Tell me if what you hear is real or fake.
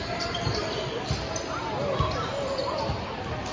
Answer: real